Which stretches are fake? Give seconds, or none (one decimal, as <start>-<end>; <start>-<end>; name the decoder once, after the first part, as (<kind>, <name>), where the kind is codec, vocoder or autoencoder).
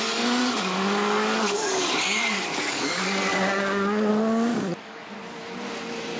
0.4-4.1 (codec, DAC); 4.5-5.1